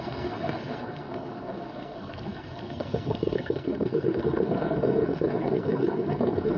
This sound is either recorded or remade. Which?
remade